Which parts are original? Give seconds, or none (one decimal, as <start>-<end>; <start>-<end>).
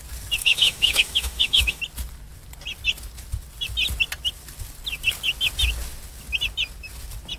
0.0-0.4; 1.8-7.4